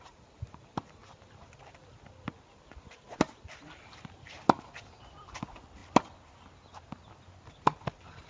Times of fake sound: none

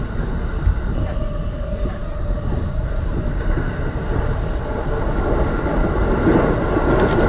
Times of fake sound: none

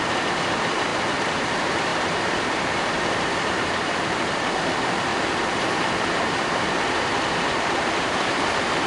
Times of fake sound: 0.0-0.9 (vocoder, BigVGAN v2); 1.4-5.1; 5.6-8.9

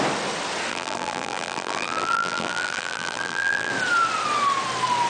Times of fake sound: 0.7-3.7 (vocoder, BigVGAN v2)

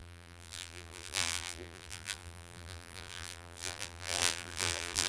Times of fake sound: 0.0-5.1 (vocoder, BigVGAN v2)

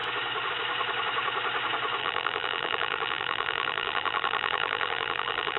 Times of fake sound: 2.0-5.6 (vocoder, BigVGAN v2)

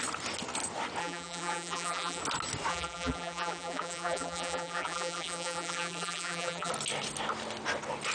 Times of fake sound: 1.0-2.2 (vocoder, BigVGAN v2); 2.7-6.7

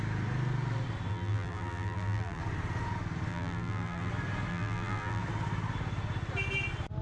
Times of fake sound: 1.1-2.4 (vocoder, BigVGAN v2); 3.3-4.1; 4.5-5.2